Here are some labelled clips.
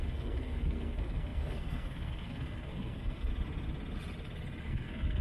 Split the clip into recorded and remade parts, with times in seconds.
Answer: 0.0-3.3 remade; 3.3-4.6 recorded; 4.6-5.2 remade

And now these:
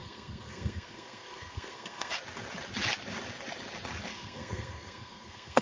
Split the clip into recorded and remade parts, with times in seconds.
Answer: 0.0-2.1 remade; 2.1-4.1 recorded; 4.1-5.6 remade

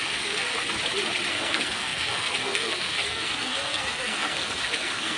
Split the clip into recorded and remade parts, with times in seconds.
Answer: 0.0-0.5 remade; 0.5-1.3 recorded; 1.3-5.2 remade